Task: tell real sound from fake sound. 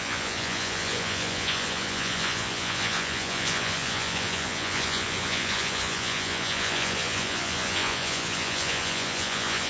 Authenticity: fake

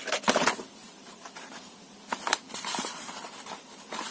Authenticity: real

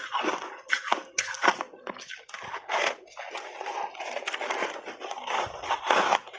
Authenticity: real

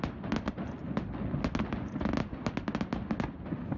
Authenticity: real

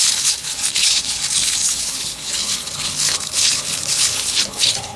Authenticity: fake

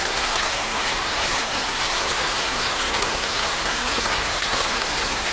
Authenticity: fake